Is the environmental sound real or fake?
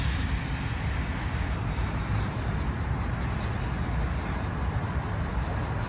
real